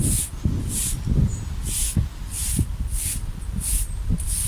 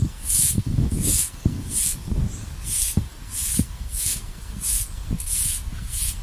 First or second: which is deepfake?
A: second